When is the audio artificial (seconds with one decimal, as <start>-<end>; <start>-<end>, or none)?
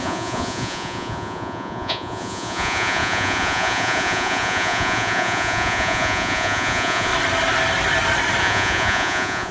0.0-7.1; 8.4-9.5